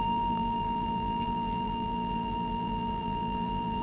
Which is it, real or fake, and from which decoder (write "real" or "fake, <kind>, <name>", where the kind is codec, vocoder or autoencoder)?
fake, vocoder, BigVGAN v2